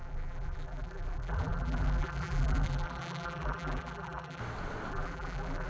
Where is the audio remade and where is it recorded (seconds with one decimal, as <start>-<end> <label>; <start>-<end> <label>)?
0.0-4.4 remade; 4.4-4.9 recorded; 4.9-5.7 remade

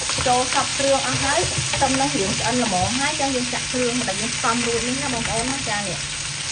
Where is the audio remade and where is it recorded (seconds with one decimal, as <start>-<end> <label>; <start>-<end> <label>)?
0.0-6.5 recorded

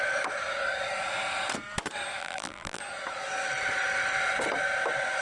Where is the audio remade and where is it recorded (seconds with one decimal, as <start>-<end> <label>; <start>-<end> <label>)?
0.0-2.2 recorded; 2.2-2.8 remade; 2.8-5.2 recorded